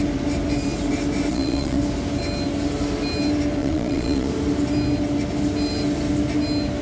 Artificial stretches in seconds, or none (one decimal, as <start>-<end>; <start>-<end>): 1.3-1.8; 3.6-4.3